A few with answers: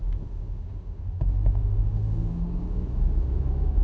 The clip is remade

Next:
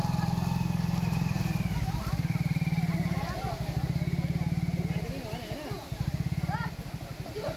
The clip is recorded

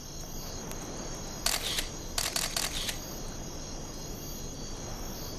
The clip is recorded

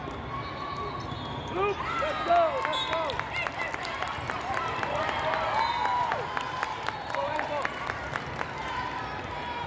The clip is recorded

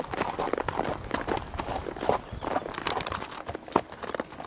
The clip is recorded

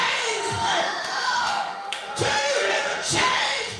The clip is remade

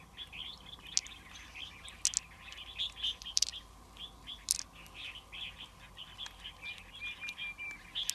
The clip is recorded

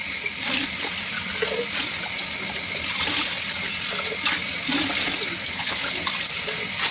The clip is recorded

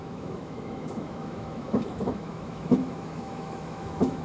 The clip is remade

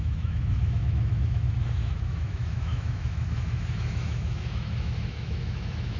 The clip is remade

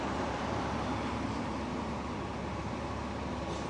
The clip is recorded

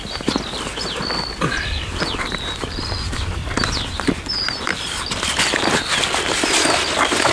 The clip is recorded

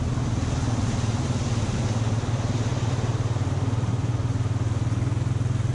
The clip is recorded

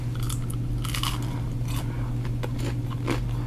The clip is recorded